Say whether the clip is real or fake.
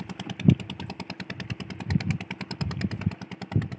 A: real